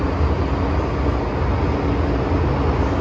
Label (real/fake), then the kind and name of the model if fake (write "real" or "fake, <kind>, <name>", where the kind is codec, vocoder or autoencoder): real